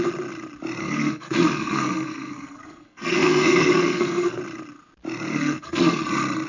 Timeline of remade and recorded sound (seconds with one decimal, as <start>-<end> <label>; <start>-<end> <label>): 0.0-0.8 recorded; 0.8-4.4 remade; 4.4-5.3 recorded; 5.3-6.0 remade; 6.0-6.5 recorded